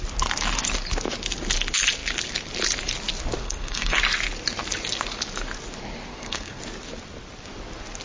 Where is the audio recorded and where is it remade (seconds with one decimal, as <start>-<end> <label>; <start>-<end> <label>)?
0.0-3.4 recorded; 3.4-4.0 remade; 4.0-6.1 recorded; 6.1-6.6 remade; 6.6-8.0 recorded